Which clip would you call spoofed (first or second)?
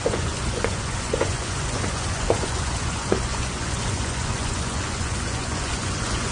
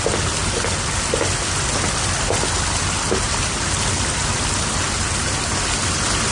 first